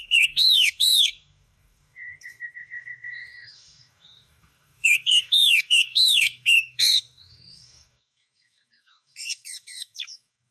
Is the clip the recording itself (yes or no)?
no